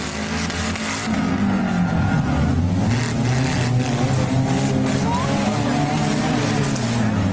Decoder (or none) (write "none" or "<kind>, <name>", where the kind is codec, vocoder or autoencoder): none